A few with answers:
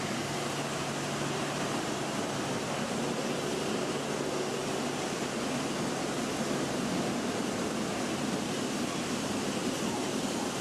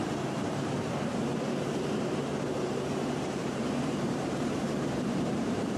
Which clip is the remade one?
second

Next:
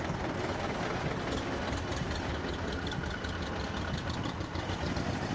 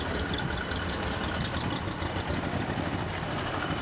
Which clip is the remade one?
second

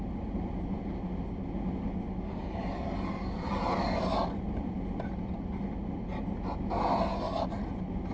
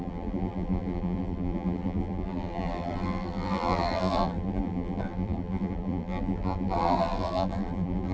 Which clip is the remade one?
second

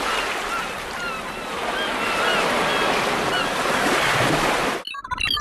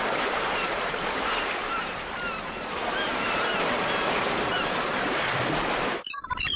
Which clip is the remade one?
second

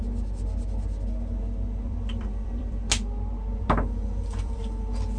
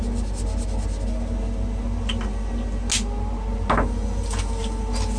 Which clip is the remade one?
first